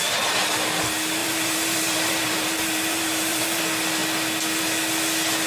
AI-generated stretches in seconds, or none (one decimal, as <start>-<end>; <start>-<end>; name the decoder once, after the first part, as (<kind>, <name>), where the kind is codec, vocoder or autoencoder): 1.2-3.6 (vocoder, BigVGAN v2)